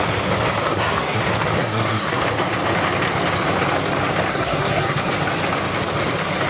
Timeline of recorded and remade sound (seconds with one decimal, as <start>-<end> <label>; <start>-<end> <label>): 0.0-0.7 recorded; 0.7-1.2 remade; 1.2-1.6 recorded; 1.6-2.2 remade; 2.2-4.3 recorded; 4.3-5.1 remade; 5.1-6.5 recorded